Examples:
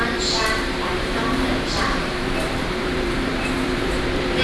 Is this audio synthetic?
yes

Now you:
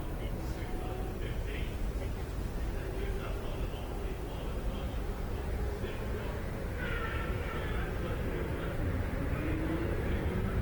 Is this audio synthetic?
yes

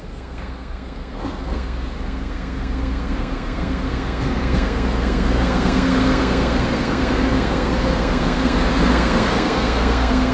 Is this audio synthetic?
yes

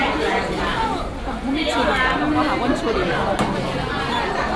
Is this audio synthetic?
no